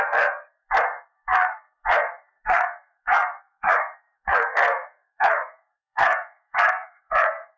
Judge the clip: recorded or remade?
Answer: remade